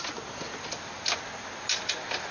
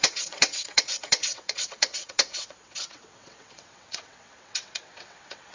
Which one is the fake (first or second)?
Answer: second